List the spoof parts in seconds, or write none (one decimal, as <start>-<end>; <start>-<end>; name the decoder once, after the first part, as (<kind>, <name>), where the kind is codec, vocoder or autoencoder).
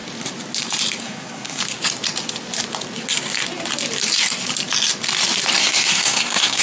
1.0-1.6 (codec, SNAC); 5.6-6.6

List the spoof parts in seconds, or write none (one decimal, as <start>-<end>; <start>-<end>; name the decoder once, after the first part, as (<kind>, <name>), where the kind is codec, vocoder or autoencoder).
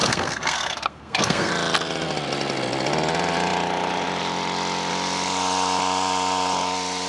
0.0-1.5 (codec, SNAC)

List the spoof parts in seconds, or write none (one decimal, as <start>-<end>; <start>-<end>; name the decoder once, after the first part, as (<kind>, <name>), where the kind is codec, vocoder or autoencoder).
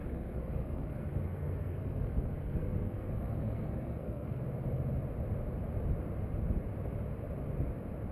0.0-4.4 (codec, SNAC)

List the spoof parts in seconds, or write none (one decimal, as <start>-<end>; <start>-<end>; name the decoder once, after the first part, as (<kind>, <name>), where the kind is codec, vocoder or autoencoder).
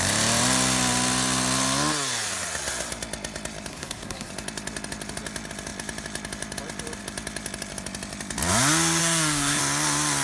3.7-4.3 (codec, SNAC); 9.0-9.6